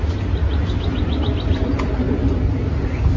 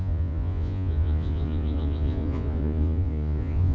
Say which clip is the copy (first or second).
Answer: second